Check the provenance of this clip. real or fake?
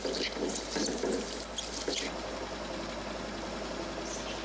real